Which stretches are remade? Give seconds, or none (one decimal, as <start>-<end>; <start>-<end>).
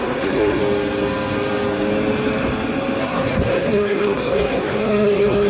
0.0-0.6; 3.0-5.5